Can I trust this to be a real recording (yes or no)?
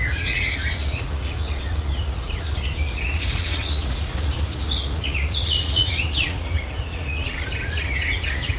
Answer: no